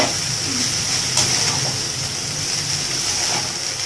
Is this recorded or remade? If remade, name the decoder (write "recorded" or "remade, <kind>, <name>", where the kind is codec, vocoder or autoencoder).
recorded